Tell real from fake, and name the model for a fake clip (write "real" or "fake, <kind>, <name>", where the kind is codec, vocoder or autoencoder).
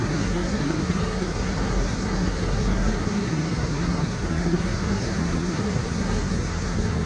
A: fake, codec, SNAC